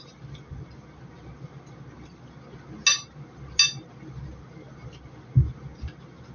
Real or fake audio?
real